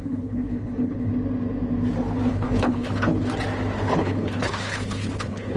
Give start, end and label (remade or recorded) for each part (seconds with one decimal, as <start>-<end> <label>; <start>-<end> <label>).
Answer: 0.0-1.1 remade; 1.1-2.3 recorded; 2.3-3.2 remade; 3.2-3.8 recorded; 3.8-5.6 remade